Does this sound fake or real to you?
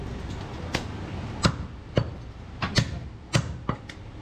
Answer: real